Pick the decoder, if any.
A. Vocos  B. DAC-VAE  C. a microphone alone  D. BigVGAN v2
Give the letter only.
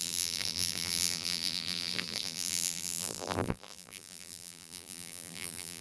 D